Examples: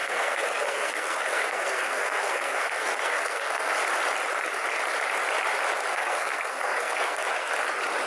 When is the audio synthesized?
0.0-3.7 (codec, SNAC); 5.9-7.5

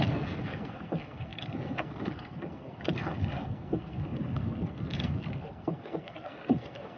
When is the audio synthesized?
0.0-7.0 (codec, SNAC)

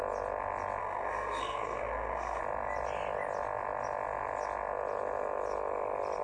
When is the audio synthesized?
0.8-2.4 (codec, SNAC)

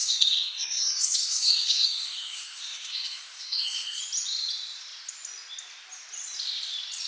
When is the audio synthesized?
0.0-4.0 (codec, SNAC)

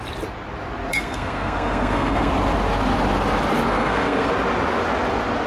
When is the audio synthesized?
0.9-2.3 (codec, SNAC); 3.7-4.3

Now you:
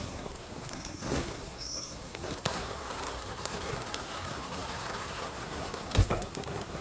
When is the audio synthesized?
0.0-6.8 (codec, SNAC)